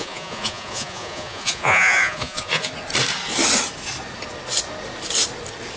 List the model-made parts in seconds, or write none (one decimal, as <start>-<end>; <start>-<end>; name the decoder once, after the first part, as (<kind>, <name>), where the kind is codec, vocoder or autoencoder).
0.0-2.7 (vocoder, Vocos)